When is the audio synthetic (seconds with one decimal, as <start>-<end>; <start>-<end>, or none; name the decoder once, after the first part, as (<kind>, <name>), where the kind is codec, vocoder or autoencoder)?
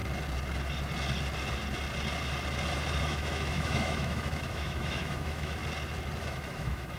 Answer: 3.0-5.6 (autoencoder, DAC-VAE); 6.2-7.0